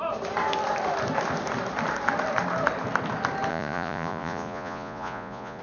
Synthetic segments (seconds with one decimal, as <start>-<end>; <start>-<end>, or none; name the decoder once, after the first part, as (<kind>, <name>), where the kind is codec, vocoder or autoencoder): 3.5-5.6 (vocoder, Vocos)